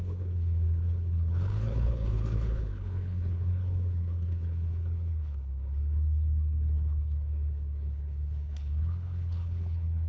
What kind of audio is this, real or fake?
fake